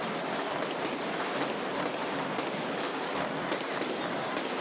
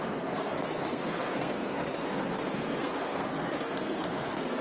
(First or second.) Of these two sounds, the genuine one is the first